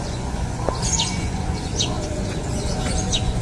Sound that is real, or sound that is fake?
fake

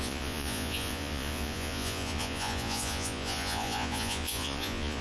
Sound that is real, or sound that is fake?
fake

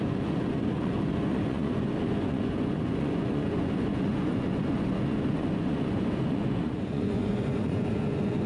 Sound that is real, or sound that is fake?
fake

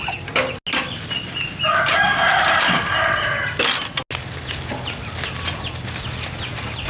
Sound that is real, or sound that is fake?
real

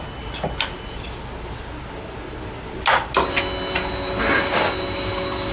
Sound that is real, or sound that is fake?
real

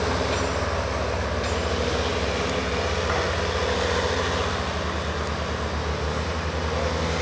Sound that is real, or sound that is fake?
real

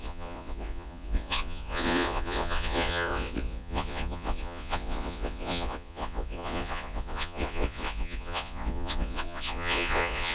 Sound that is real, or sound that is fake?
fake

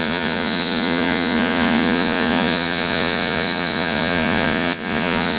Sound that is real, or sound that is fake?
fake